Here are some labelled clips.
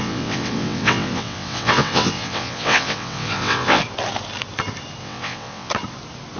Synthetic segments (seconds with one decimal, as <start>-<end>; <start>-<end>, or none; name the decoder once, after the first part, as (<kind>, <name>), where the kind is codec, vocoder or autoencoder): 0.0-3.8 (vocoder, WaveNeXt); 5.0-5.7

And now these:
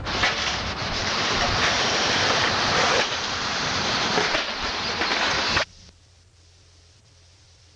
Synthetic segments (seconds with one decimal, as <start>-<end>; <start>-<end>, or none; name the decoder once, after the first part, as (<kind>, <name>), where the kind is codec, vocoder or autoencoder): 0.8-4.7 (vocoder, BigVGAN v2)

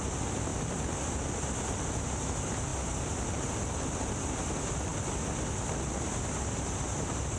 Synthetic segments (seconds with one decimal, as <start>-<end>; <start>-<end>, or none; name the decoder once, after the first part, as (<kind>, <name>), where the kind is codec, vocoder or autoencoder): none

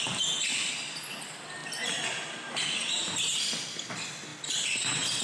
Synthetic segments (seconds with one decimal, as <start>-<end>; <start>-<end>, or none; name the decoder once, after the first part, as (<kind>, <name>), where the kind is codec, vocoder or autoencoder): none

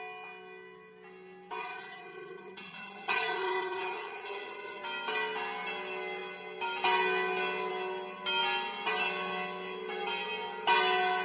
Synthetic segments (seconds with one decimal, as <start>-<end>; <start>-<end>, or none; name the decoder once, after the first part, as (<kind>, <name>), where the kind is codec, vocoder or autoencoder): 1.6-4.8 (vocoder, HiFi-GAN)

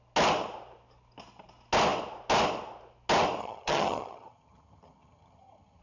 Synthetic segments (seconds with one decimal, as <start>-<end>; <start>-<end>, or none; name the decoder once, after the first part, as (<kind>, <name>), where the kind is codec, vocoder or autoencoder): 3.4-5.8 (vocoder, HiFi-GAN)

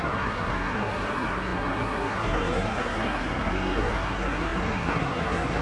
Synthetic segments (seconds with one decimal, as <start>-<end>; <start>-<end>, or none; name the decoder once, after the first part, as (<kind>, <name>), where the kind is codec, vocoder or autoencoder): 0.0-5.6 (codec, SNAC)

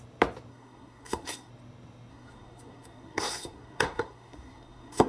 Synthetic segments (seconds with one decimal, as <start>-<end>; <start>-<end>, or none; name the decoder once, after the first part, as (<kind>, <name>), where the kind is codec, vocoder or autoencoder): 0.5-1.5 (codec, SNAC); 2.1-5.1